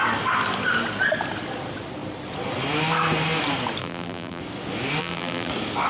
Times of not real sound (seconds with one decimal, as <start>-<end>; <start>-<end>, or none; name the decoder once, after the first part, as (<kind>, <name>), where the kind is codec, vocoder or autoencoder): 3.8-4.4 (vocoder, BigVGAN v2); 5.0-5.5